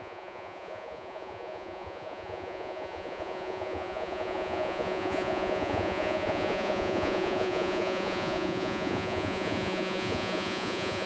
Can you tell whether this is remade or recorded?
remade